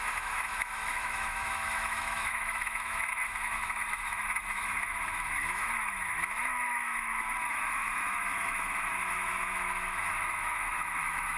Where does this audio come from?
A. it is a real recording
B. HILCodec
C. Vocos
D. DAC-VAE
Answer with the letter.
D